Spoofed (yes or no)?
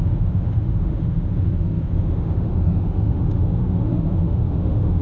yes